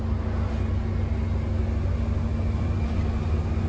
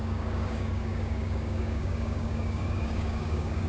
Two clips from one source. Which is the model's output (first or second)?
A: second